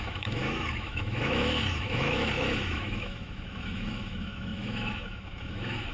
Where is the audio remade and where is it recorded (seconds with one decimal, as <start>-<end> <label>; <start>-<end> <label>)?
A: 0.0-5.9 remade